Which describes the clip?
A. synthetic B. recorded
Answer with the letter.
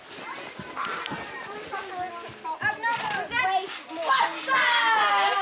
B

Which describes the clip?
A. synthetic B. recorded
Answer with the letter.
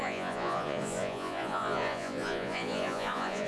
A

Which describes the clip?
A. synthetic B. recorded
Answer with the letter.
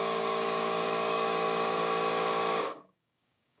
A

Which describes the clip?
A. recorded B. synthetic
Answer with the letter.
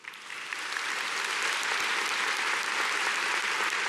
A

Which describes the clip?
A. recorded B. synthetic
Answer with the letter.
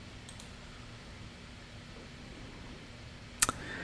A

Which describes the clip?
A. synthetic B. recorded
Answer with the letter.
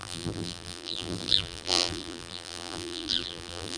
A